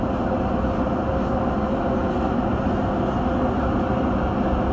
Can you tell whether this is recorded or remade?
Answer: recorded